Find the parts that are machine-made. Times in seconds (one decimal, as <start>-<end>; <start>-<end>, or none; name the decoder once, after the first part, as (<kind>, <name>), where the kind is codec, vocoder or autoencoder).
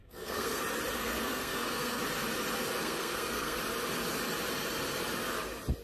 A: 0.0-0.6 (codec, SNAC); 1.0-2.0; 2.8-3.6